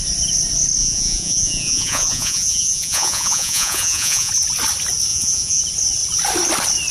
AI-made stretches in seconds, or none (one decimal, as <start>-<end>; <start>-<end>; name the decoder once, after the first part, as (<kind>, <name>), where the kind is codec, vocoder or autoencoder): 0.8-4.3 (vocoder, Vocos); 5.1-5.6